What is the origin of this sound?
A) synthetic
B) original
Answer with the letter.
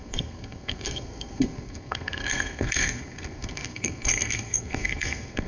A